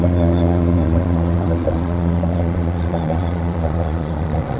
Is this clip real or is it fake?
fake